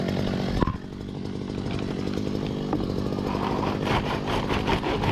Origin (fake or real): real